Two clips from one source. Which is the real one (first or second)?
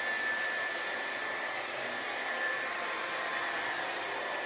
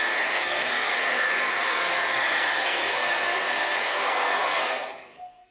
first